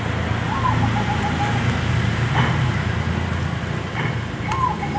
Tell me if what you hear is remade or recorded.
recorded